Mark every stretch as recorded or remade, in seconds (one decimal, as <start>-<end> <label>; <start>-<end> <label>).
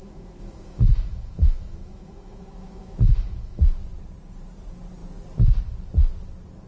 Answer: 0.0-3.6 remade; 3.6-6.7 recorded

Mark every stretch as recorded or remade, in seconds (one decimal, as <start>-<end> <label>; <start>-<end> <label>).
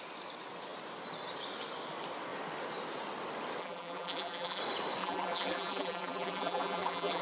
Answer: 0.0-3.6 recorded; 3.6-4.6 remade; 4.6-5.0 recorded; 5.0-7.2 remade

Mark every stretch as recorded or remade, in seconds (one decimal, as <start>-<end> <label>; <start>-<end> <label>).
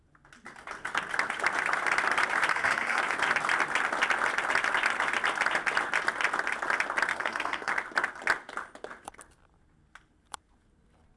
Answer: 0.0-2.5 recorded; 2.5-3.0 remade; 3.0-7.1 recorded; 7.1-7.7 remade; 7.7-11.2 recorded